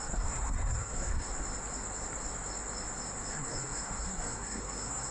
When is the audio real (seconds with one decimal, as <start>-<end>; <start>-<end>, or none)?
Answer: 1.3-3.3

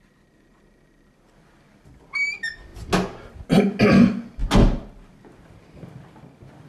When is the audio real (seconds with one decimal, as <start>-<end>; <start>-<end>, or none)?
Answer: 0.0-6.7

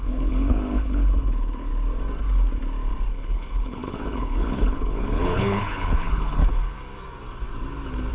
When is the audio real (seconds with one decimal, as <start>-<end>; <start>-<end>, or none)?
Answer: 1.7-3.1; 6.4-8.1